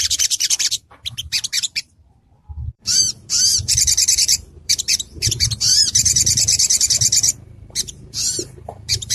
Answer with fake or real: fake